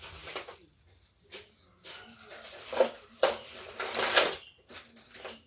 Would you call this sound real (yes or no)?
yes